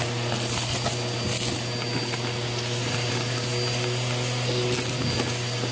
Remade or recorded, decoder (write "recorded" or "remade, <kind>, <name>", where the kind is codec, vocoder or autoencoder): recorded